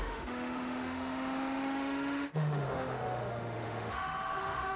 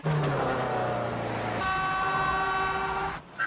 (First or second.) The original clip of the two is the second